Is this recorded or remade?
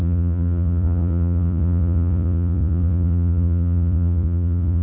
remade